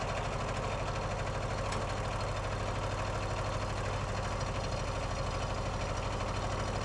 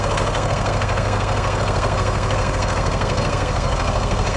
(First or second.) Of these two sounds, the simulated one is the second